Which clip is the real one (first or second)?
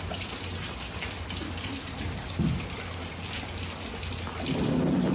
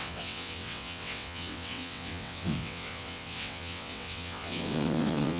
first